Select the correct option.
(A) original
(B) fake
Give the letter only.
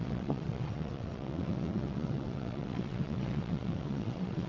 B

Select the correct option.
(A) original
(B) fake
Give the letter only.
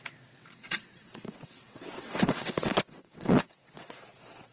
B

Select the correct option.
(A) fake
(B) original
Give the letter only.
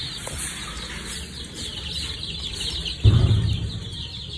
B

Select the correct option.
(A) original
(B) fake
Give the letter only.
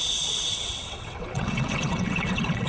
B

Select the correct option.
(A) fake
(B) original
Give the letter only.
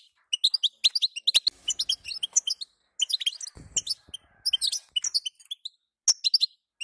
B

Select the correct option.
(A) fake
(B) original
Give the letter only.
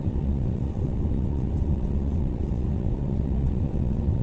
A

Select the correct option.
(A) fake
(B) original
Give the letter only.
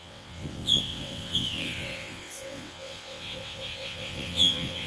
A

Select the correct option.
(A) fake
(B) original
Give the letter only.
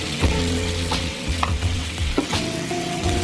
A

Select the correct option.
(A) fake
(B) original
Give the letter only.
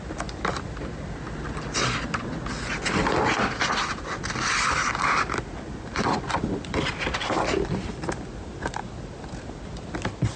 B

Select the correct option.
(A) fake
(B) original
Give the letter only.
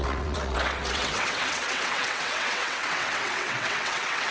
A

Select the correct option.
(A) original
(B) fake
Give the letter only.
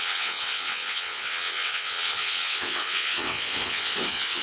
B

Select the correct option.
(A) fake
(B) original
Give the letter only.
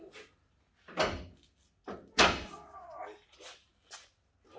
B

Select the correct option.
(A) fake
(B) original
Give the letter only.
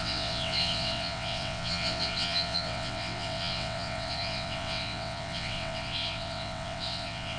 A